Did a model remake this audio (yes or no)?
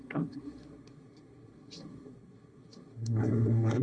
yes